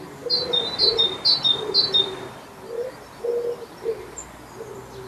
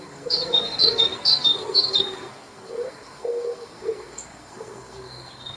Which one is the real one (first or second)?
first